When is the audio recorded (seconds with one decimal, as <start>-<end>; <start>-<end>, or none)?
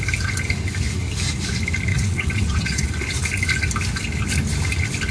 0.0-1.9; 2.9-5.1